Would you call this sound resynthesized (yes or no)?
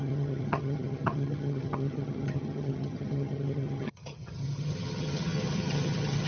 yes